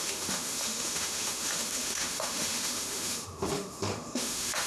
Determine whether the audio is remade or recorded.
remade